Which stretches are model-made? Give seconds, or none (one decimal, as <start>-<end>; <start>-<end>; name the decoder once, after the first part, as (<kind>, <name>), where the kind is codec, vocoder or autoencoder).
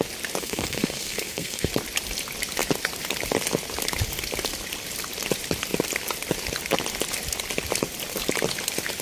0.4-1.7 (codec, SNAC)